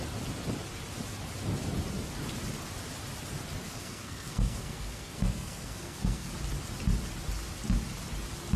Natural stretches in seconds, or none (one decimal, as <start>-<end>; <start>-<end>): 0.0-3.6; 6.3-8.6